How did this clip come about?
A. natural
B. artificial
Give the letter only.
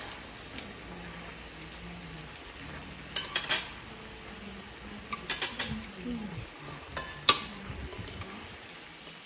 A